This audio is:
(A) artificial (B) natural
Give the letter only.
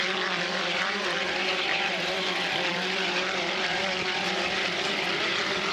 A